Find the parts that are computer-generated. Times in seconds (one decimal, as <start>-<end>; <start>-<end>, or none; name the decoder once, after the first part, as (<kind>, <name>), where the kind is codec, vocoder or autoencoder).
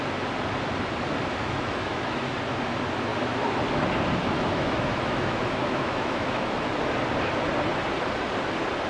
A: 1.4-2.3 (autoencoder, DAC-VAE); 3.1-3.6; 4.2-6.7